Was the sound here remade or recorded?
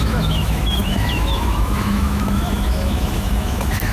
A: remade